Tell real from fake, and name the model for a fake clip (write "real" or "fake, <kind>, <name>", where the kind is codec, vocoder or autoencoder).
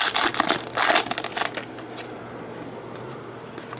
real